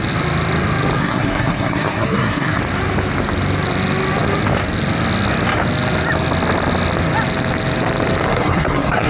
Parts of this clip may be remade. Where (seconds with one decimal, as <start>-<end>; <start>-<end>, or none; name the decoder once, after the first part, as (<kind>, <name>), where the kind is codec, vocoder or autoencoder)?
1.0-2.6 (codec, SNAC); 8.3-9.1